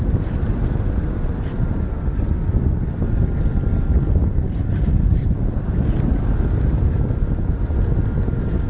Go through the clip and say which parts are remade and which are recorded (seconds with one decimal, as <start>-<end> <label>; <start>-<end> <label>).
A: 0.0-8.7 recorded